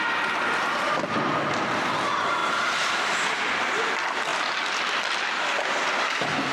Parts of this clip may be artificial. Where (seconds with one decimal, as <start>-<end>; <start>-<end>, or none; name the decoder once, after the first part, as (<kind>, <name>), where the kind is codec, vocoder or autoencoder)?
none